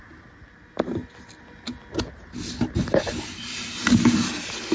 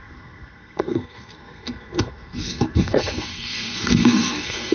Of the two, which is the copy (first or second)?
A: second